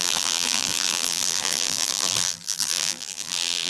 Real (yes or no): no